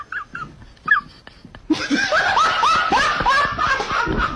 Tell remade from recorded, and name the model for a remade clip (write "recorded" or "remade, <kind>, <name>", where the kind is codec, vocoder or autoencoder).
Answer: recorded